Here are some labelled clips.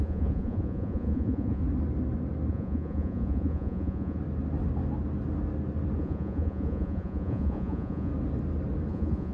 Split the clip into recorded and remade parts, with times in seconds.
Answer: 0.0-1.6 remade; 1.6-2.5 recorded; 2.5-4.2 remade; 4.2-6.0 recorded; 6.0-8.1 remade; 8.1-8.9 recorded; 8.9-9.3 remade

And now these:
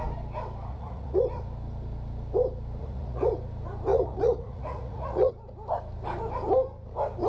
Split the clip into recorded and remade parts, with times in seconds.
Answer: 0.0-0.7 recorded; 0.7-1.2 remade; 1.2-2.8 recorded; 2.8-3.3 remade; 3.3-3.9 recorded; 3.9-5.3 remade; 5.3-7.3 recorded

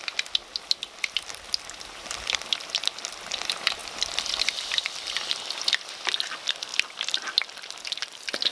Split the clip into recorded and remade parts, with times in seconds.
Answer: 0.0-8.5 recorded

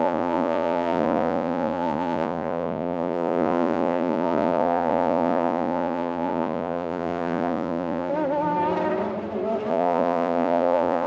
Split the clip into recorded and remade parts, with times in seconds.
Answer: 0.0-8.1 remade; 8.1-9.7 recorded; 9.7-11.1 remade